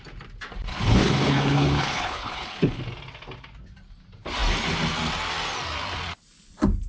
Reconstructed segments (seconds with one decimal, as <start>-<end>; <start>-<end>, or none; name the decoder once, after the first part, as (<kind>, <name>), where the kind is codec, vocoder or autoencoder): 0.7-2.8 (codec, HILCodec)